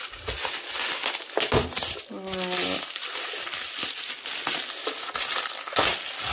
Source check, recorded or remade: recorded